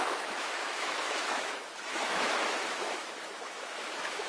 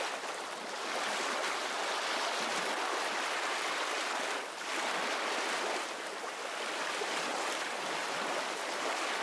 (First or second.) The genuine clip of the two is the second